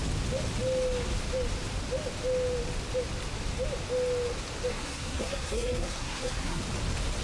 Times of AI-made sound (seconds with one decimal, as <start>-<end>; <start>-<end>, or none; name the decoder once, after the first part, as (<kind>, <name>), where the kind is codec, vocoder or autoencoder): 4.7-6.6 (codec, SNAC)